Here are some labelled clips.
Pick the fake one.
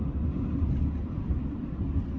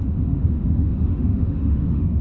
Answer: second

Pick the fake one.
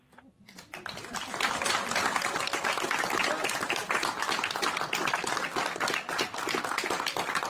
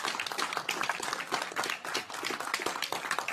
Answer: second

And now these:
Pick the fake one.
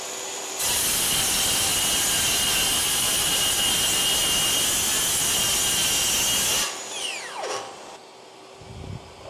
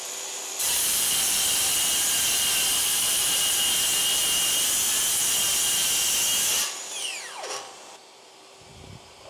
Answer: second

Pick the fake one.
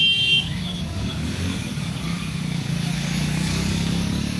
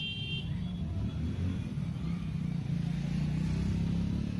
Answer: first